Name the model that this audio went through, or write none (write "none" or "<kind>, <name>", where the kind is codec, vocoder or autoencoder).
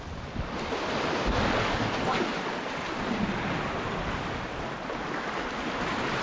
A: none